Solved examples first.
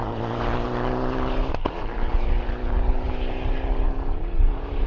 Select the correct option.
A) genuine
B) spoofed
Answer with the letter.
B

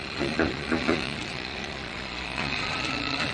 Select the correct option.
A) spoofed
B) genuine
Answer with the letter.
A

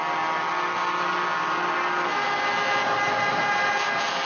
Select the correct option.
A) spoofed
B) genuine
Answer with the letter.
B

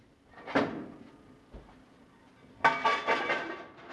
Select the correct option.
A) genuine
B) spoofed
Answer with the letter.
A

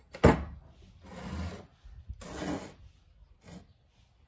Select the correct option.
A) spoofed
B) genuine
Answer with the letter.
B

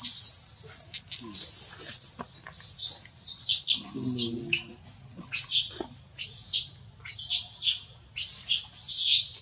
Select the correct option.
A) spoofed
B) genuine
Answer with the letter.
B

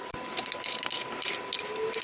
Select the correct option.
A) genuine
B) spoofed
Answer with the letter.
A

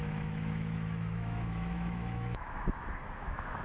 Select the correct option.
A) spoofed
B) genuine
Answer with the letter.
A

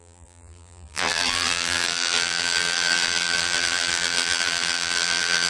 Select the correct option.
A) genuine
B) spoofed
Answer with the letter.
B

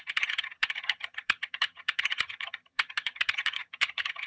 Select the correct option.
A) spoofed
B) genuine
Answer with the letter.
A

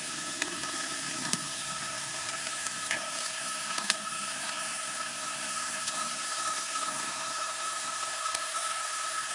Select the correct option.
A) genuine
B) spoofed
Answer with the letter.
B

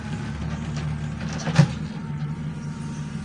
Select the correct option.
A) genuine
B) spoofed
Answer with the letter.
A